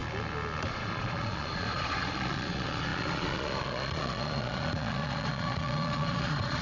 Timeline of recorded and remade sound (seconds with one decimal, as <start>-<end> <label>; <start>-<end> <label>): 0.0-0.7 recorded; 0.7-6.6 remade